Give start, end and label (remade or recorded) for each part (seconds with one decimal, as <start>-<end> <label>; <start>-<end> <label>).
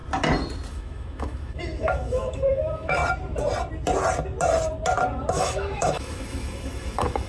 0.0-0.7 recorded; 0.7-3.0 remade; 3.0-5.3 recorded; 5.3-7.3 remade